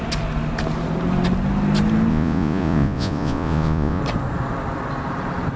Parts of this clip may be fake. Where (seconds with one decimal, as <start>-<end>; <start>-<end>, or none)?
2.1-4.0